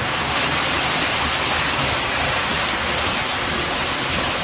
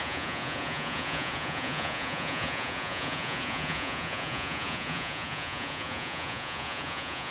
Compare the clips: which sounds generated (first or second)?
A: second